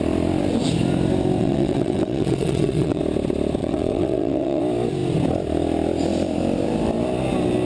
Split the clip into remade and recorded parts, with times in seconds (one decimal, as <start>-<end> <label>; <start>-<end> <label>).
0.0-1.4 recorded; 1.4-3.0 remade; 3.0-3.6 recorded; 3.6-4.6 remade; 4.6-7.7 recorded